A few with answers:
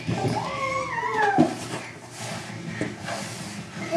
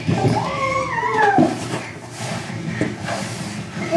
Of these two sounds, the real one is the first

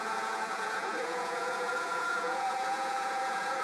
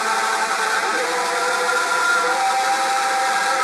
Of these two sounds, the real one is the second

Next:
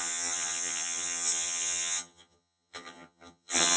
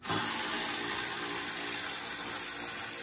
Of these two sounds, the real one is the second